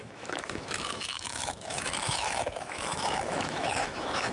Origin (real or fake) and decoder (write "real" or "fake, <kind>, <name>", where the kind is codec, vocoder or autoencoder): fake, autoencoder, DAC-VAE